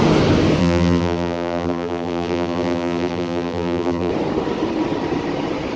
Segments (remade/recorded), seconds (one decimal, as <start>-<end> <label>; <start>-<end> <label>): 0.0-0.6 recorded; 0.6-4.1 remade; 4.1-5.8 recorded